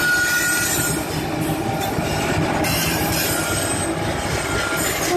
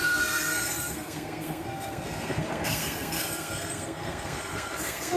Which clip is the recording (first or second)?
first